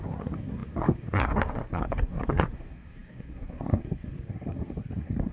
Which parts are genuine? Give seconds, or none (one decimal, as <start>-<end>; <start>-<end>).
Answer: none